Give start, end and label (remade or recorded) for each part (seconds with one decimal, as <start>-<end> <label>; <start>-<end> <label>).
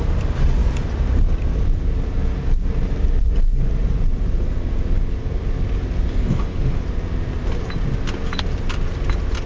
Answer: 0.0-6.1 recorded; 6.1-6.8 remade; 6.8-9.5 recorded